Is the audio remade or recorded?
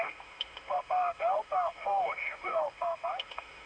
remade